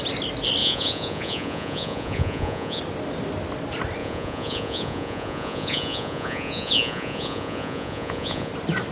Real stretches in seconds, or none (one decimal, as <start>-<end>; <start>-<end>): 0.0-0.6; 2.8-4.0; 8.5-8.9